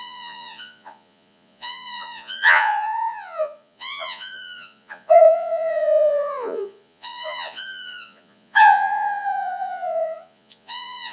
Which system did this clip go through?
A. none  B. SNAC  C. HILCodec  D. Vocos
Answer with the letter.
D